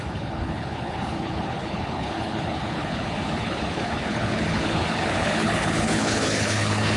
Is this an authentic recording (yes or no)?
no